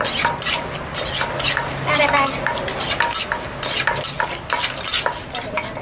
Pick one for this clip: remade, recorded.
recorded